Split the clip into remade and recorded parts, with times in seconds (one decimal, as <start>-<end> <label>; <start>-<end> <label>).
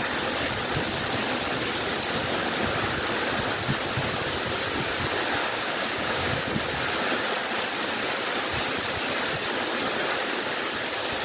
0.0-5.4 recorded; 5.4-6.5 remade; 6.5-11.2 recorded